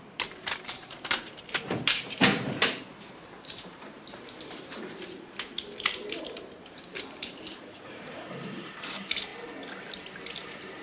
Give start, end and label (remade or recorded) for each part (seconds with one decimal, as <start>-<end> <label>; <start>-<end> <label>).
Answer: 0.0-9.3 remade; 9.3-10.4 recorded; 10.4-10.8 remade